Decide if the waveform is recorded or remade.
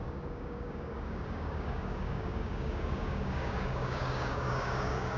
remade